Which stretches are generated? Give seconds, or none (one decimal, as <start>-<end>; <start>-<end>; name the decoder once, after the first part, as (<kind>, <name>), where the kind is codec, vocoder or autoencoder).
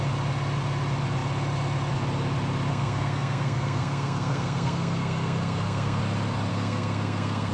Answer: 2.7-6.0 (codec, SNAC); 6.5-7.5